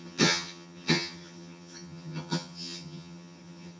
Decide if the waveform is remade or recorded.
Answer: remade